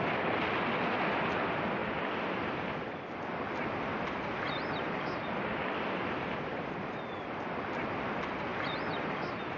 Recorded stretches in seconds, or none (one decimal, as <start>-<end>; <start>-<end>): 0.0-1.8; 2.8-3.9; 7.0-8.5; 9.1-9.6